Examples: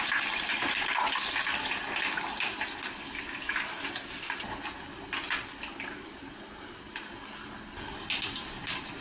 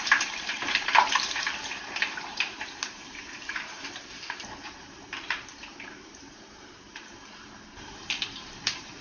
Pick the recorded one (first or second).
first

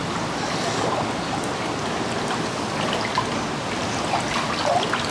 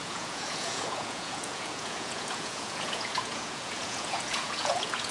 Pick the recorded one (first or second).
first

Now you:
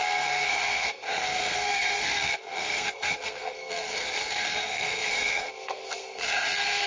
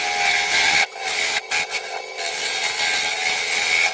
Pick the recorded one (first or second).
second